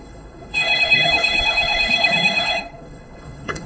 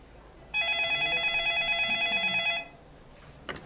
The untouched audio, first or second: second